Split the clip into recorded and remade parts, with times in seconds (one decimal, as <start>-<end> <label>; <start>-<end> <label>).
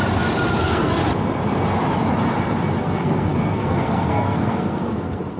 0.0-0.6 recorded; 0.6-1.0 remade; 1.0-2.8 recorded; 2.8-5.4 remade